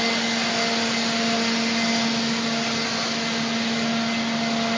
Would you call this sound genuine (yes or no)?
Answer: yes